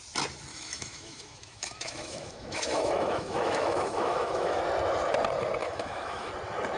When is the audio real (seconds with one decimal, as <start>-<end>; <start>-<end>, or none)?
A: 0.0-0.5; 4.6-5.6; 6.3-6.8